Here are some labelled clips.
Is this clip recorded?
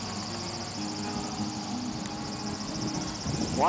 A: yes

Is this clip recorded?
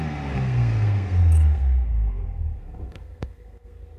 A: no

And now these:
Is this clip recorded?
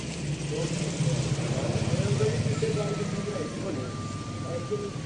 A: yes